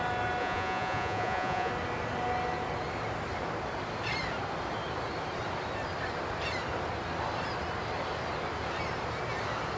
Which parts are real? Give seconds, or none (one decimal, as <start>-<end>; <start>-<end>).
0.0-0.4; 1.7-9.8